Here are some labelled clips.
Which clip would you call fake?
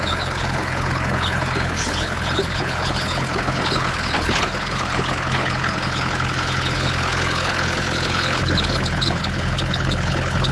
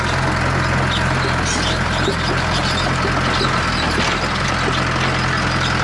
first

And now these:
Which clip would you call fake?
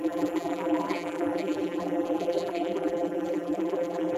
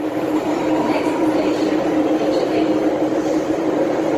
first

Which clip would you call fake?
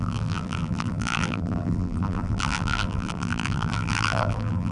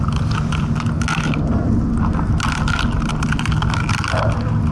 first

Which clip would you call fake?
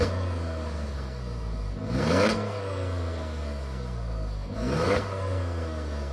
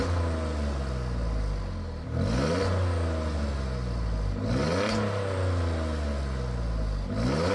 first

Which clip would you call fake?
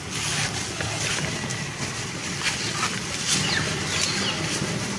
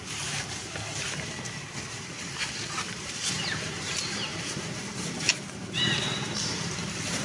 second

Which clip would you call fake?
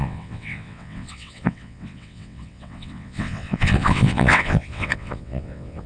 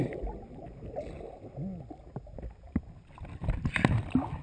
first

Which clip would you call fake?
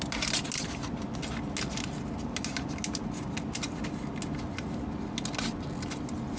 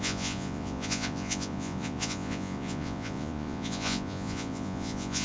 second